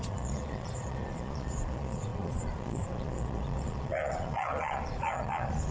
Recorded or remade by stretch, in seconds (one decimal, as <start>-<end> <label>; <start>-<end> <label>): 0.0-5.7 remade